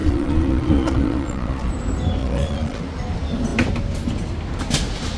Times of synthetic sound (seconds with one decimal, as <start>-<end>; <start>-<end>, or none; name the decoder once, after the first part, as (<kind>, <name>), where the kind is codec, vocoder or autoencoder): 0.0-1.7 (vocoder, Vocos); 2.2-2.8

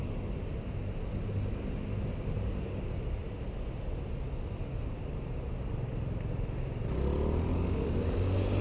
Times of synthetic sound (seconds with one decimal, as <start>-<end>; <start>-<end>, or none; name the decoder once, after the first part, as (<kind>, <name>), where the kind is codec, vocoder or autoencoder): none

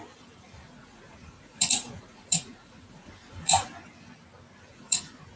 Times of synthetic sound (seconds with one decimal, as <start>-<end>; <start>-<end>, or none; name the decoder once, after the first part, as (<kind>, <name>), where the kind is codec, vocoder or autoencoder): 0.5-3.7 (vocoder, Vocos); 4.7-5.4

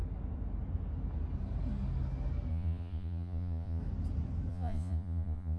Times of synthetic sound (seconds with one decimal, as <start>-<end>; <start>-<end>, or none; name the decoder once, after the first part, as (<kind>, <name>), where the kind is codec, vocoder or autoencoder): 2.5-3.8 (vocoder, Vocos); 4.5-5.6

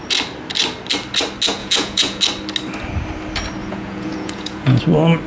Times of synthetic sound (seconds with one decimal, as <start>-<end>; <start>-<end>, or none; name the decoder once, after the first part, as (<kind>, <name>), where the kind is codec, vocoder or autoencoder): 1.6-2.2 (vocoder, Vocos); 3.6-4.8

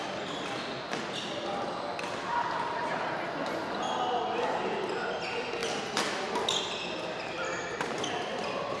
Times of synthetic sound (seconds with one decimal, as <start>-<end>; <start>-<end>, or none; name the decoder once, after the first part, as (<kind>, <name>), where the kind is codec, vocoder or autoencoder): none